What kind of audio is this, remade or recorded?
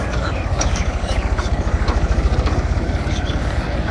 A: remade